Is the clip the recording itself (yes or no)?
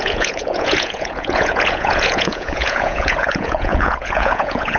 no